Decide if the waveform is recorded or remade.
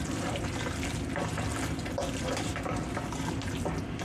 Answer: recorded